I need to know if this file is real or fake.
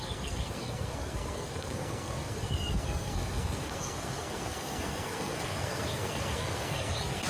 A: fake